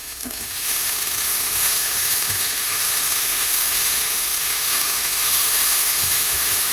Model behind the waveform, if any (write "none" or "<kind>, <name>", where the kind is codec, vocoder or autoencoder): autoencoder, DAC-VAE